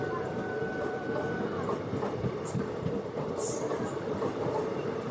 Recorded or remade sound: remade